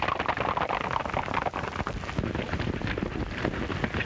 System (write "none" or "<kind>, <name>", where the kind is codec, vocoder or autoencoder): none